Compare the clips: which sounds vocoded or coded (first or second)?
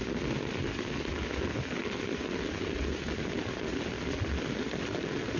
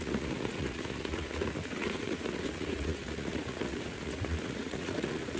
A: second